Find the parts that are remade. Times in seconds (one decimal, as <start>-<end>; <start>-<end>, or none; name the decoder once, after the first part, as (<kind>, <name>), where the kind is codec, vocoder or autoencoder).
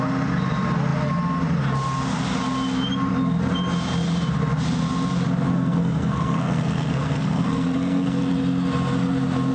5.5-8.2 (codec, SNAC)